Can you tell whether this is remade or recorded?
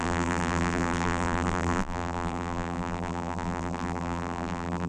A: remade